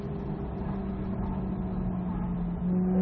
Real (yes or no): yes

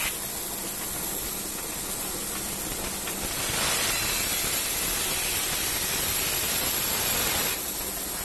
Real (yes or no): yes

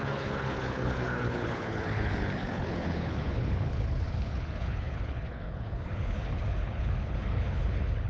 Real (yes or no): no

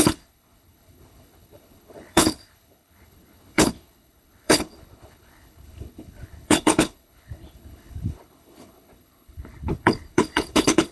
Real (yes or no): no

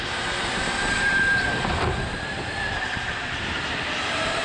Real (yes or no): no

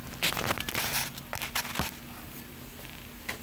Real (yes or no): yes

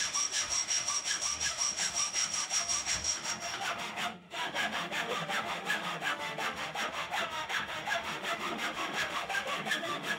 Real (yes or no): no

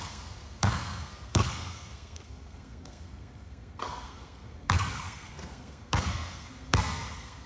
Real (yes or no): no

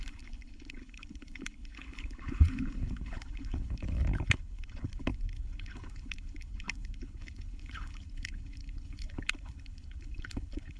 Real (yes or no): no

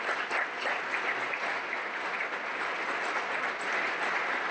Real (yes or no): yes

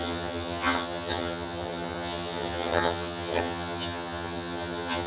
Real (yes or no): no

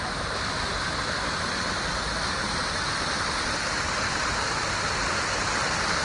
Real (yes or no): yes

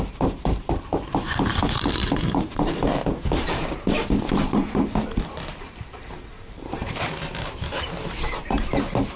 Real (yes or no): no